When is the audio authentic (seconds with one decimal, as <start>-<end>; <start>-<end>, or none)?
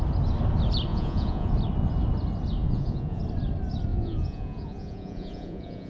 0.0-0.9; 1.5-2.6; 3.2-3.9